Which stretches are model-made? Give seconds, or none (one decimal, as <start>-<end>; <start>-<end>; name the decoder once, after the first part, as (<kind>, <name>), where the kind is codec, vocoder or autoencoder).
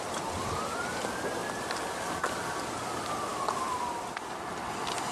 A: none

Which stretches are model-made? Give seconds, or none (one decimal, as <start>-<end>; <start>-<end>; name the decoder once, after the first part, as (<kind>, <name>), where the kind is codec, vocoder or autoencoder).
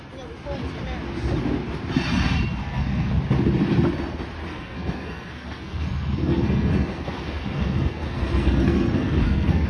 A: 2.6-3.1 (codec, SNAC); 4.5-9.7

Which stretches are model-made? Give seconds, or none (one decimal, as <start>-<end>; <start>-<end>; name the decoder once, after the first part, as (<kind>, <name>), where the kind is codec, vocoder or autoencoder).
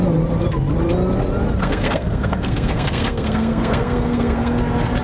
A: 1.6-4.6 (codec, SNAC)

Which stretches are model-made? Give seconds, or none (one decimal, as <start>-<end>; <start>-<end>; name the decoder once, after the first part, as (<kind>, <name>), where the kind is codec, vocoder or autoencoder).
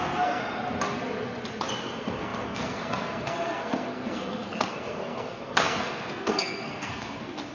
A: 0.0-0.4 (codec, SNAC); 1.8-7.5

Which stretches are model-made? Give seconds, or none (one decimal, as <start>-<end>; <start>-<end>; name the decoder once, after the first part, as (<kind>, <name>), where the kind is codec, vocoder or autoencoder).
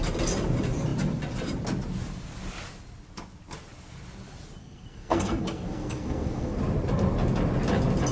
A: 4.6-6.6 (codec, SNAC)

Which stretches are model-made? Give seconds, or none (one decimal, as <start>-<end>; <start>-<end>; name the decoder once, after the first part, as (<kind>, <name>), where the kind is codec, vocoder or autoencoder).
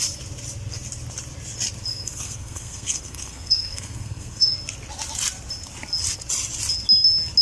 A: 1.9-4.6 (codec, SNAC)